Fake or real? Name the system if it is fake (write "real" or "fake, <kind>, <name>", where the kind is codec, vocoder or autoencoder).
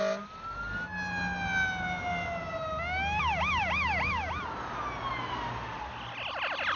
real